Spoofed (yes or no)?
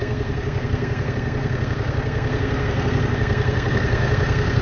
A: yes